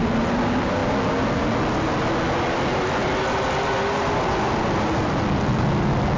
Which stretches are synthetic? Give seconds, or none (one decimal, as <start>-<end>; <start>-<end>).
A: none